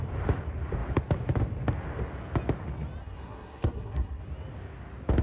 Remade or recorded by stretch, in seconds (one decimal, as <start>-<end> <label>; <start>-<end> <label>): 0.0-3.0 recorded; 3.0-4.2 remade; 4.2-5.2 recorded